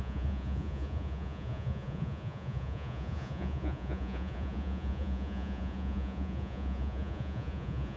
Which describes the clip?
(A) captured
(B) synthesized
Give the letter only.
B